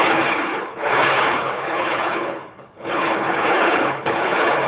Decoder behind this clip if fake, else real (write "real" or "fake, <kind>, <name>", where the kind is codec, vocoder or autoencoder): fake, codec, HILCodec